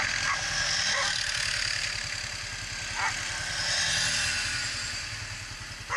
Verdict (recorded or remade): recorded